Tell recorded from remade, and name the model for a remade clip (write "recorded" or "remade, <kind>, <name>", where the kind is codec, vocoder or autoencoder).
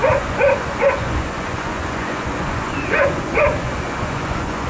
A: remade, vocoder, Vocos